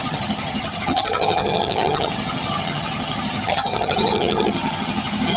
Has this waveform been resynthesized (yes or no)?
yes